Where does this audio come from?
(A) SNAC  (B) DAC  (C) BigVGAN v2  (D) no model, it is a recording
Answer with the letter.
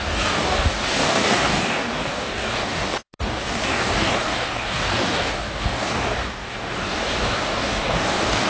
B